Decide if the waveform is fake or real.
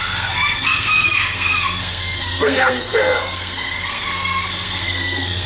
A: fake